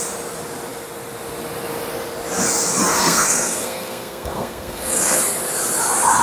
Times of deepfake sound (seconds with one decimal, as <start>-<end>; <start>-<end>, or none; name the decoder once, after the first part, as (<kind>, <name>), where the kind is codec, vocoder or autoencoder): 2.9-5.2 (codec, SNAC)